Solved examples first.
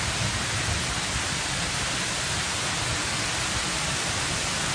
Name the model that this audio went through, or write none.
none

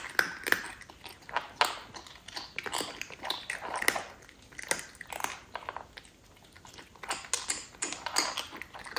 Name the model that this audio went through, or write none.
none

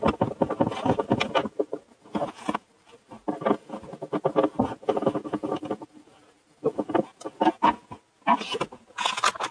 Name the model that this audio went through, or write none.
none